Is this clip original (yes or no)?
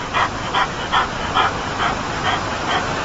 yes